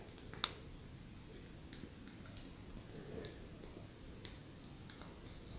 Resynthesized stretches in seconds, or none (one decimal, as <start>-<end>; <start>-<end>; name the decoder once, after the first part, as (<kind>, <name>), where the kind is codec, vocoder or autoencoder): none